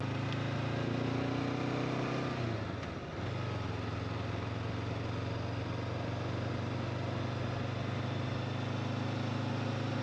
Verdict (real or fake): real